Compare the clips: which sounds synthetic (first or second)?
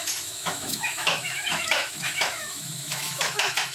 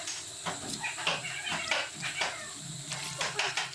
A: first